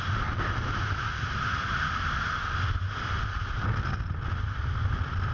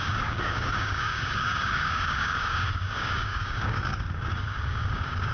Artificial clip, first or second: second